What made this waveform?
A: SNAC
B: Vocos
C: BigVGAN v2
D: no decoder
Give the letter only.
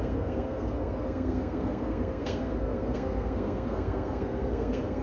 A